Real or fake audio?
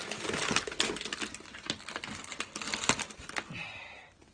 real